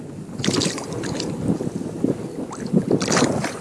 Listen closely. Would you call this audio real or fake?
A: real